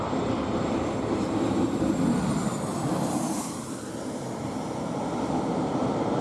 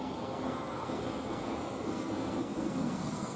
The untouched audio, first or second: first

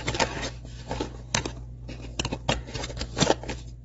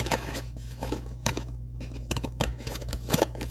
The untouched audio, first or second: first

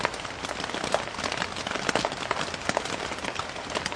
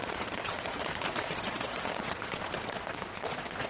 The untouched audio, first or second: first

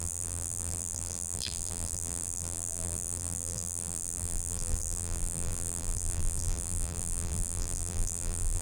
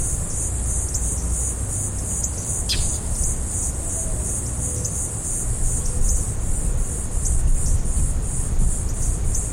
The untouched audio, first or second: second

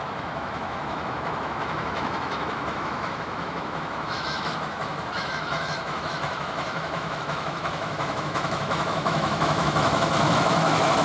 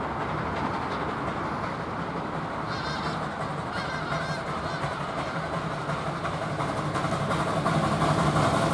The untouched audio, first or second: second